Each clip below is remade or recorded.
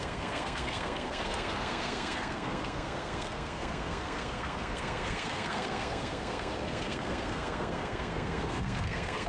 remade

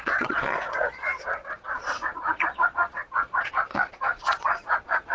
remade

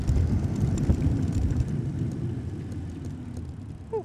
recorded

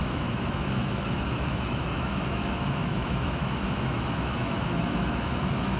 remade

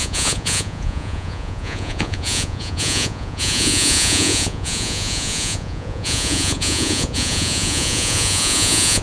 remade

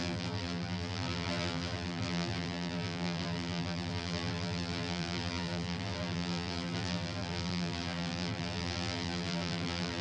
remade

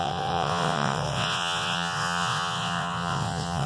remade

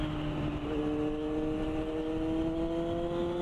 recorded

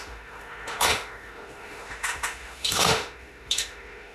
remade